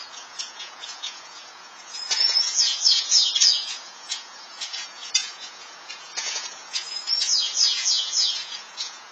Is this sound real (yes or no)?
no